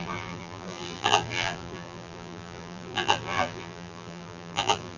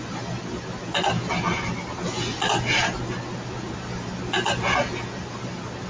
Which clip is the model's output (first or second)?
first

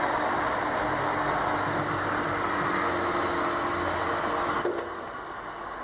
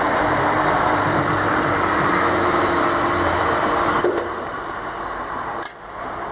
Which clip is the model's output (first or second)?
second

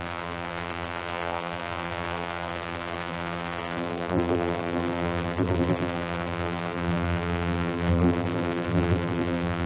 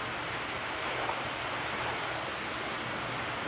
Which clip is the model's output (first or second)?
first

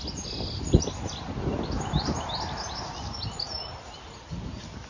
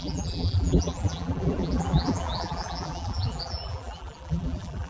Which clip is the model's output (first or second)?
second